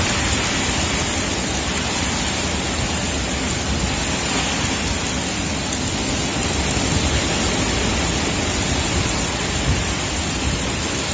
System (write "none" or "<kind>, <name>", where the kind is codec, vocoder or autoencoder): none